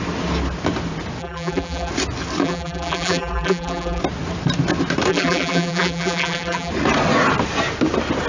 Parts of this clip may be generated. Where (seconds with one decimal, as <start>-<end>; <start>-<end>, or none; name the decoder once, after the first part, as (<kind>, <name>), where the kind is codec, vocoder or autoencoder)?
1.2-1.9 (vocoder, BigVGAN v2); 2.4-4.0; 5.1-6.7